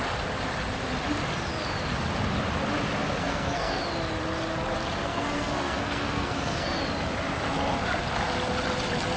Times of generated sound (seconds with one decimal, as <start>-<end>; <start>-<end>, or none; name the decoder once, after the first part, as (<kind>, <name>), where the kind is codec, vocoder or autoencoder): 3.2-3.8 (codec, SNAC); 5.0-6.8